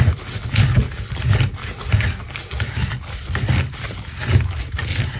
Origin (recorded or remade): recorded